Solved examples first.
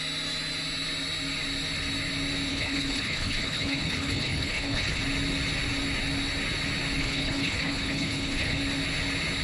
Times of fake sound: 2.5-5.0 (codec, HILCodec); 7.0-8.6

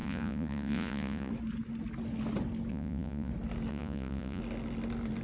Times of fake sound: 0.0-1.3 (vocoder, Vocos); 2.7-3.3; 3.7-4.4

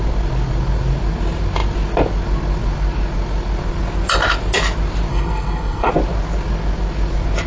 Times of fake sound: 5.1-5.9 (codec, SNAC)